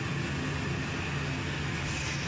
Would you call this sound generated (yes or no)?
no